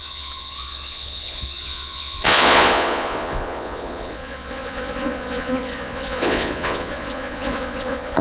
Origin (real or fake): fake